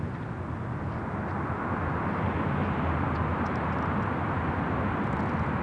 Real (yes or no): yes